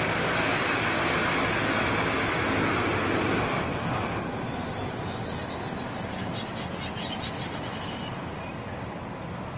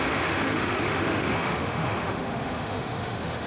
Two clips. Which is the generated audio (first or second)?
second